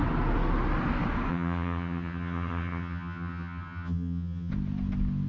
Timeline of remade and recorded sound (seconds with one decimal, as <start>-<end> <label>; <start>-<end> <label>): 0.0-1.3 recorded; 1.3-4.5 remade; 4.5-5.3 recorded